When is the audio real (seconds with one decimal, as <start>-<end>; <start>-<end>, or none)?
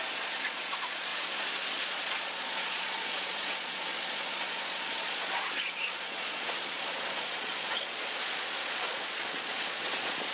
none